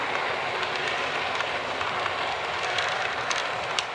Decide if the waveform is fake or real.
real